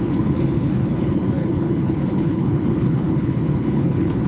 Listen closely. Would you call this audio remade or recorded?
remade